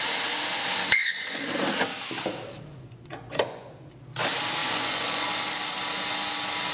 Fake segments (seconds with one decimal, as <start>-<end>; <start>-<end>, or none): 1.0-1.5; 2.7-3.7; 4.6-5.3